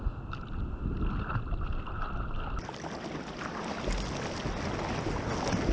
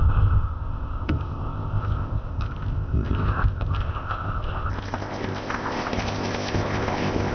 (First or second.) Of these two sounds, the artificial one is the second